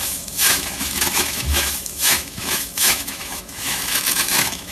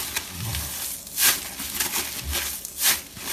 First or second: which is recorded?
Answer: second